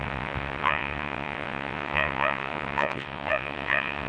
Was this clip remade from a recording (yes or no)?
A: yes